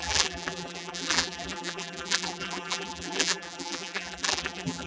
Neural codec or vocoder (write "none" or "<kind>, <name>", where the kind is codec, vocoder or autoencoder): vocoder, BigVGAN v2